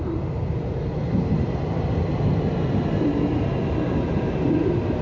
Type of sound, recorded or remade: recorded